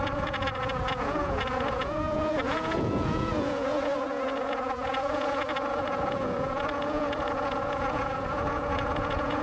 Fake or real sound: fake